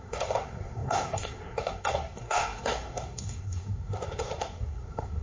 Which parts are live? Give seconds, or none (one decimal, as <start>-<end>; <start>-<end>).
none